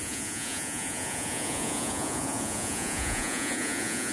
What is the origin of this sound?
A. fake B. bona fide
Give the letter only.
A